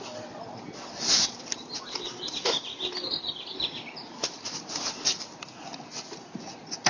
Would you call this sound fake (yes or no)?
no